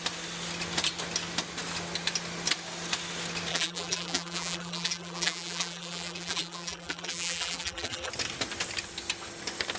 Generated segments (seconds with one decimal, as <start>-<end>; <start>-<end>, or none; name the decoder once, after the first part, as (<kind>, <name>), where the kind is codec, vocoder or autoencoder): 3.5-8.1 (vocoder, BigVGAN v2)

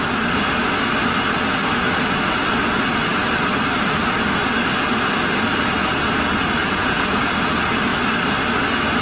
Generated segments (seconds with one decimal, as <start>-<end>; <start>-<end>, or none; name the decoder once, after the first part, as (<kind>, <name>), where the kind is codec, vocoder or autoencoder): 6.6-7.3 (vocoder, Vocos)

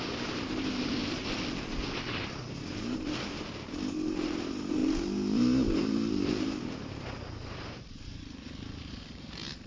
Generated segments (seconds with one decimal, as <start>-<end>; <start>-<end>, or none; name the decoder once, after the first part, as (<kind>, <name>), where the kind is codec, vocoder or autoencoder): 0.0-1.0 (vocoder, BigVGAN v2); 1.7-9.7

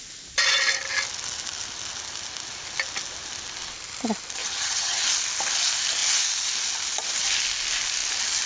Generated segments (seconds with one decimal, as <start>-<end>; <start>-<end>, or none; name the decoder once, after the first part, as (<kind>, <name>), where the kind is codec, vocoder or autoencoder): 4.4-5.0 (vocoder, HiFi-GAN)

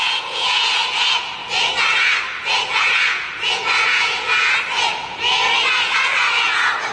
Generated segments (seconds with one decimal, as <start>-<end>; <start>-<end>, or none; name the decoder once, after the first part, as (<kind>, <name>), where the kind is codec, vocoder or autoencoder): 0.0-6.9 (vocoder, Vocos)

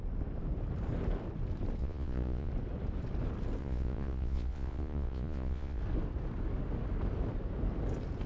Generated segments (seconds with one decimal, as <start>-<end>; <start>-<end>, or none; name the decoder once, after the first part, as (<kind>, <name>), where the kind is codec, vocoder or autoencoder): 1.8-2.5 (vocoder, Vocos); 3.6-5.8

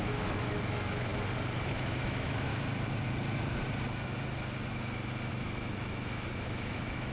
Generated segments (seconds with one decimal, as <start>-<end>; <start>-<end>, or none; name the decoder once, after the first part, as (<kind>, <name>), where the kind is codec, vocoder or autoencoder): 0.0-1.1 (autoencoder, DAC-VAE); 1.7-2.5; 5.3-7.1